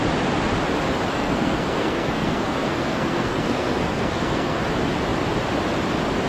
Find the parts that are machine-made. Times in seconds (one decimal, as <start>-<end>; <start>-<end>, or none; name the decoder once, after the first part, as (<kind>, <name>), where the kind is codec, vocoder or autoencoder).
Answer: 1.1-4.6 (codec, SNAC)